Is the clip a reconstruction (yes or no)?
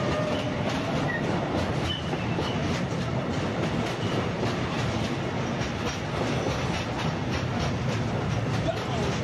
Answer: no